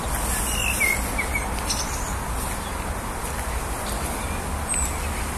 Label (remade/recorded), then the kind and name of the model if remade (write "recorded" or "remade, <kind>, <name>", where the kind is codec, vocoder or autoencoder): recorded